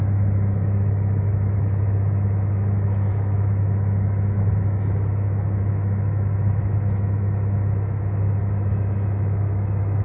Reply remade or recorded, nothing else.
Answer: remade